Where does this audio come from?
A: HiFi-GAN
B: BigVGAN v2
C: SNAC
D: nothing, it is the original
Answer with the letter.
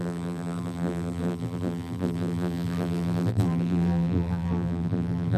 B